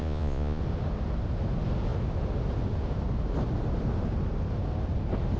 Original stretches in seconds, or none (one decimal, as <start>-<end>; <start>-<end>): 0.6-5.4